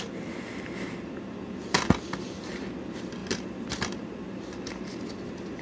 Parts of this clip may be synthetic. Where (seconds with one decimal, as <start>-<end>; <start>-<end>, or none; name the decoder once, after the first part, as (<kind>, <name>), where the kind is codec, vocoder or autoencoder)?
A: none